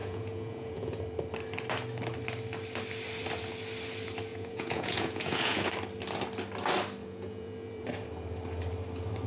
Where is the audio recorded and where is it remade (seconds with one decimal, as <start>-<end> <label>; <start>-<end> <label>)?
0.0-1.0 remade; 1.0-4.3 recorded; 4.3-5.7 remade; 5.7-7.0 recorded; 7.0-7.9 remade; 7.9-9.3 recorded